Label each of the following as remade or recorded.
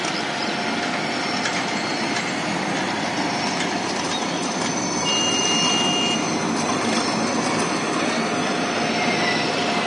recorded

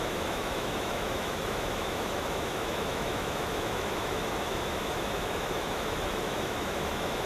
remade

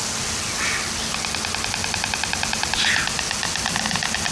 recorded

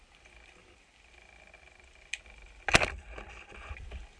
recorded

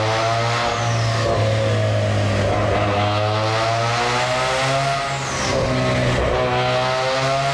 recorded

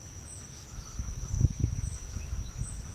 remade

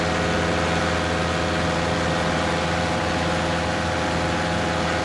recorded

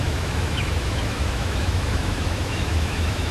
remade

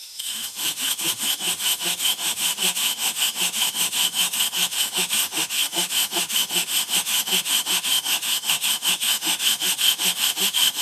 remade